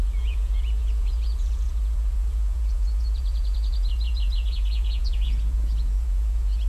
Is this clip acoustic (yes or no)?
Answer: no